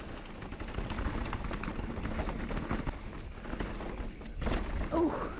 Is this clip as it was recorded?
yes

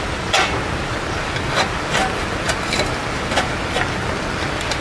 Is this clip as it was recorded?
yes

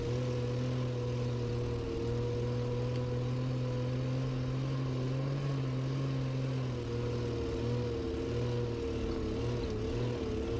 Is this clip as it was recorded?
yes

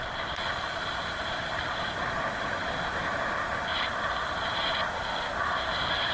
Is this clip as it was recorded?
yes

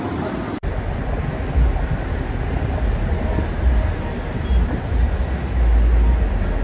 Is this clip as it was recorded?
yes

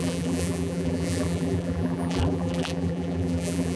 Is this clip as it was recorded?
no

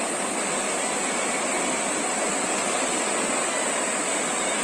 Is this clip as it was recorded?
yes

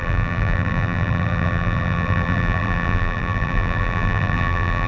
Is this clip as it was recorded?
no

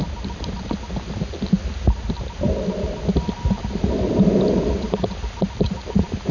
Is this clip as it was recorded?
yes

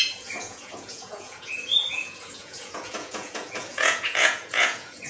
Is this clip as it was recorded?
no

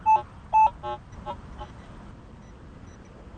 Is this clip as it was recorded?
yes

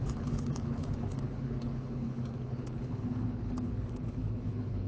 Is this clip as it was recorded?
no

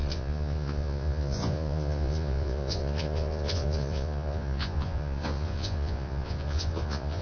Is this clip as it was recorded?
no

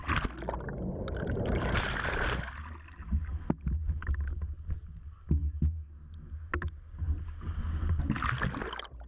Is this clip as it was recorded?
yes